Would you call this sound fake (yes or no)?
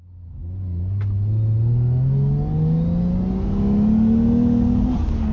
no